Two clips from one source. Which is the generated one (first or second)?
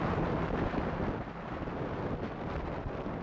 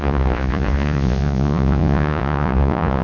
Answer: second